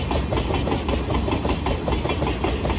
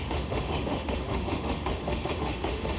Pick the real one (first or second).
first